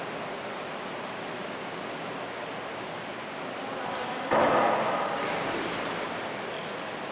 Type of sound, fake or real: real